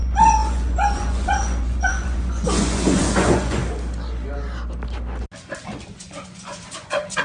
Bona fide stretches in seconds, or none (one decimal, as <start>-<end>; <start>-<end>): 3.6-5.9